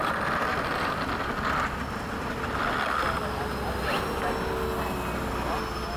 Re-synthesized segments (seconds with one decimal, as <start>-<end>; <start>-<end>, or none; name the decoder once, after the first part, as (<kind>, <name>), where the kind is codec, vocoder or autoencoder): 0.5-1.3 (vocoder, BigVGAN v2)